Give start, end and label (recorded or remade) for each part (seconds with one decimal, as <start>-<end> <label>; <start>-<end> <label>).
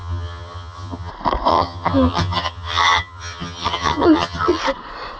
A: 0.0-1.1 remade; 1.1-1.5 recorded; 1.5-4.6 remade; 4.6-5.2 recorded